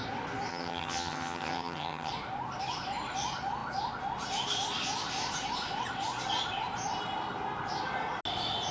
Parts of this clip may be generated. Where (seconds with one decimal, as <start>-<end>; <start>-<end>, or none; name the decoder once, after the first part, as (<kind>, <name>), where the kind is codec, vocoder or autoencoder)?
0.5-2.1 (vocoder, HiFi-GAN)